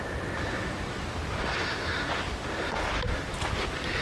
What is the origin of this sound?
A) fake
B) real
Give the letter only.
B